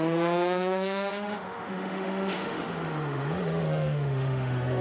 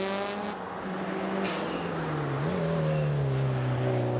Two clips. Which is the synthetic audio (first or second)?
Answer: first